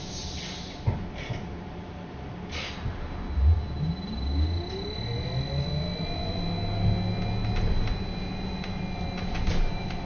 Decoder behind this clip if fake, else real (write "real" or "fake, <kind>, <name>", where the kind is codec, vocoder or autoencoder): real